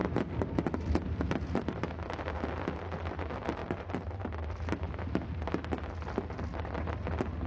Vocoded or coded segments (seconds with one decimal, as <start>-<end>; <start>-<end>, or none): none